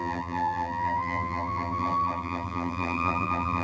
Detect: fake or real fake